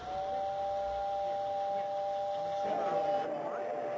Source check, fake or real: real